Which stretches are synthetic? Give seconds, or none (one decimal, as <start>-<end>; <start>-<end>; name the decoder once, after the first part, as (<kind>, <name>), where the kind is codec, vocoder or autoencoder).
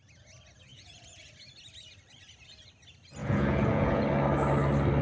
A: 0.7-1.3 (vocoder, Vocos); 3.2-4.0